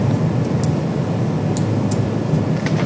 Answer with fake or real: real